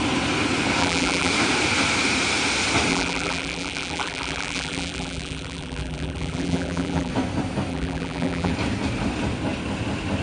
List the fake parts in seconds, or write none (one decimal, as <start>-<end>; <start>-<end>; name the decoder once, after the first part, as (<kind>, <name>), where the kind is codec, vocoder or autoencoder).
0.8-1.3 (vocoder, BigVGAN v2); 2.9-7.1; 7.7-8.5